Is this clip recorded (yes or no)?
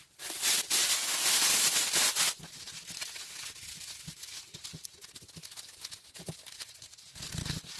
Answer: yes